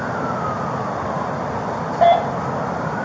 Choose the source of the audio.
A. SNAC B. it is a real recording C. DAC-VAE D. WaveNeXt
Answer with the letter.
B